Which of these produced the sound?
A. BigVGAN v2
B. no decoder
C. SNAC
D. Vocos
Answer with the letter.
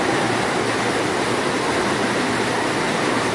B